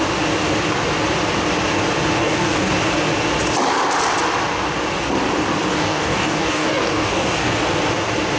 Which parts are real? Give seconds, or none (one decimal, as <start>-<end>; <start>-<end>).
0.0-2.2; 2.7-5.7; 7.5-8.4